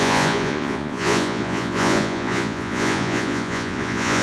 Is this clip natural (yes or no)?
no